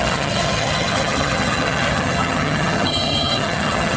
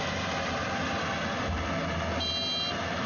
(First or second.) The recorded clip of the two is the second